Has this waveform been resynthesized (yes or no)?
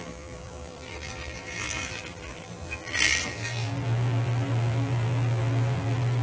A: yes